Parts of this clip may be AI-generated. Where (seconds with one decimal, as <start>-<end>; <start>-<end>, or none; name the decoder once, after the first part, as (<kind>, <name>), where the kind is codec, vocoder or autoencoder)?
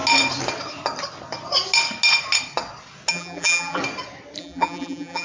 3.1-3.8 (vocoder, BigVGAN v2); 4.4-5.2